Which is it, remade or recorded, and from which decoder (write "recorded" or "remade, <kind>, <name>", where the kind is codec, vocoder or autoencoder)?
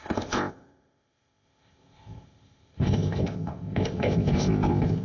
remade, codec, ZipCodec